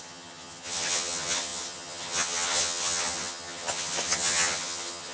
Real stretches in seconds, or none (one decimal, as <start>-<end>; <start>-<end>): none